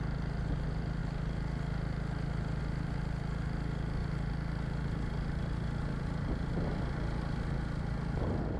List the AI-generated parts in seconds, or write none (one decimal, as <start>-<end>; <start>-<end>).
none

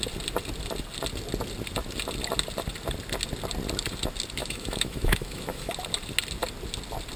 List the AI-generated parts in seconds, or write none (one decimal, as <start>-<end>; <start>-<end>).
4.4-5.7